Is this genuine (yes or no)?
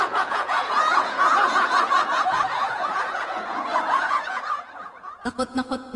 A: no